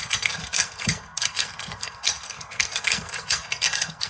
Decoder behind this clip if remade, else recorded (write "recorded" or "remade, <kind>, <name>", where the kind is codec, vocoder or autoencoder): remade, codec, SNAC